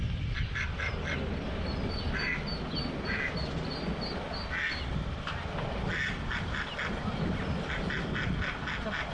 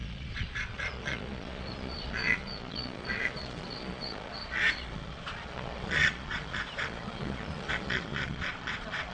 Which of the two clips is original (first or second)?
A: first